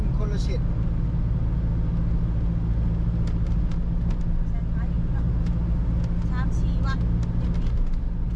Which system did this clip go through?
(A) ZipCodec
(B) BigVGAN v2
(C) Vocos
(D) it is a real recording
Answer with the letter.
D